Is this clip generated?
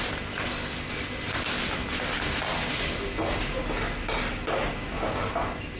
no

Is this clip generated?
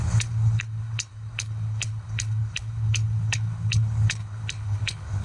yes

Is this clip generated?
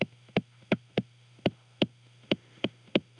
yes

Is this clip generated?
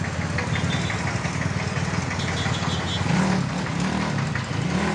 no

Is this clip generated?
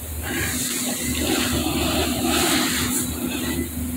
no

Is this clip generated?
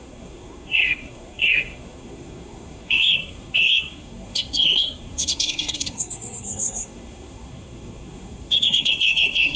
yes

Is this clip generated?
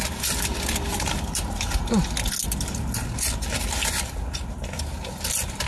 no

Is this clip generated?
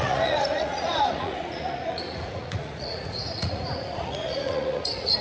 yes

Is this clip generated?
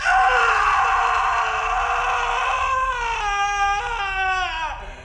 no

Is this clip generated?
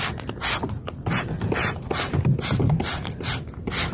no